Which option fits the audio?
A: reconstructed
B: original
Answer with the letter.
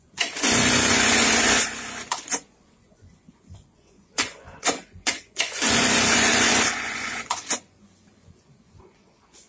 A